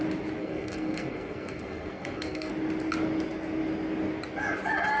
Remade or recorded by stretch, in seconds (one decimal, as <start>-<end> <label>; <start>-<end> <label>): 0.0-0.4 recorded; 0.4-2.5 remade; 2.5-5.0 recorded